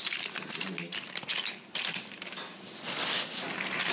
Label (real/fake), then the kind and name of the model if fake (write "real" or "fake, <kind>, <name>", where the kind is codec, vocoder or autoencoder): real